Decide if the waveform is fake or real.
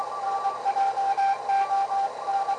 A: real